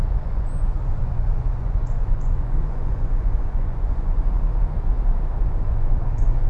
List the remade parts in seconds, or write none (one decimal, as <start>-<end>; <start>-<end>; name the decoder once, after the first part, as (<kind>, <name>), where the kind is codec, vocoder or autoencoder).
0.0-4.2 (vocoder, Vocos); 5.4-6.5